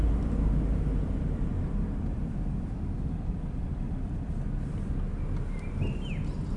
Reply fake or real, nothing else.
real